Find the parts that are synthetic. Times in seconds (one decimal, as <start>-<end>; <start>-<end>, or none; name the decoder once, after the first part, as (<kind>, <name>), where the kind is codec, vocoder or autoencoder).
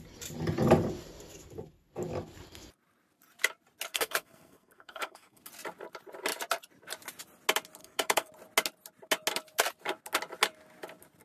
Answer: 3.9-5.4 (codec, SNAC); 7.8-8.3